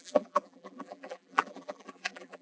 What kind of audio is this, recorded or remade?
remade